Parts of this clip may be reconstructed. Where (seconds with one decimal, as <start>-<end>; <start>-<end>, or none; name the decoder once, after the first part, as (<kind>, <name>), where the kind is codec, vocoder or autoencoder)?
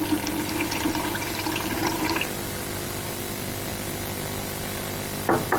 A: 1.8-3.2 (vocoder, BigVGAN v2); 3.7-5.6